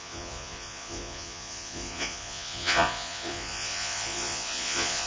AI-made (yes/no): yes